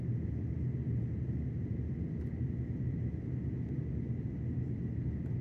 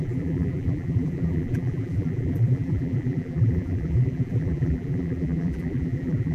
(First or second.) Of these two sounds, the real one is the first